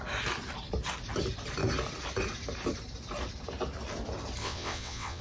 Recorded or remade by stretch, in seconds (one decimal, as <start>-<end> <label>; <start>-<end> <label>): 0.0-4.4 recorded; 4.4-5.2 remade

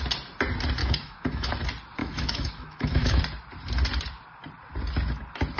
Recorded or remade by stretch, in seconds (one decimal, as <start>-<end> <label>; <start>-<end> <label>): 0.0-0.8 recorded; 0.8-1.5 remade; 1.5-2.0 recorded; 2.0-3.2 remade; 3.2-5.6 recorded

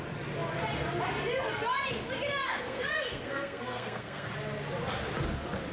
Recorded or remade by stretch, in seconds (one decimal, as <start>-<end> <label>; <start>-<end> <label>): 0.0-2.4 recorded; 2.4-4.3 remade; 4.3-5.7 recorded

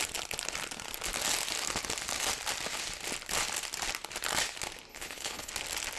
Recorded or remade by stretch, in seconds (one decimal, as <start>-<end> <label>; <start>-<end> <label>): 0.0-4.9 recorded; 4.9-5.5 remade; 5.5-6.0 recorded